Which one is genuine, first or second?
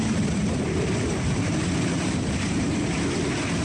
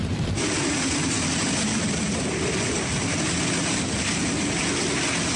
second